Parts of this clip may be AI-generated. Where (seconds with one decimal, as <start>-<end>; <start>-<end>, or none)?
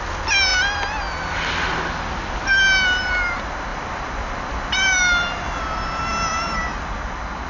3.7-5.6; 6.1-6.6